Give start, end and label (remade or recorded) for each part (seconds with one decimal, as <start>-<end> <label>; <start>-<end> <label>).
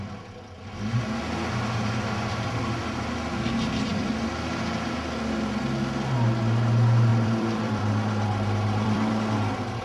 0.0-7.1 recorded; 7.1-9.1 remade; 9.1-9.8 recorded